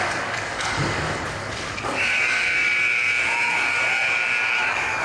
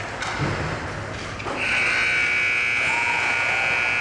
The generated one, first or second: first